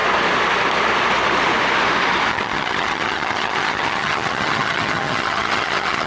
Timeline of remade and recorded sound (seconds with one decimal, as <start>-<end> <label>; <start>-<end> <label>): 0.0-2.3 recorded; 2.3-6.1 remade